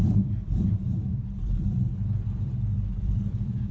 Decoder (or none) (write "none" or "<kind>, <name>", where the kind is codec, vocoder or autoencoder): vocoder, BigVGAN v2